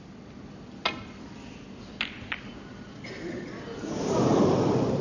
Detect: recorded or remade recorded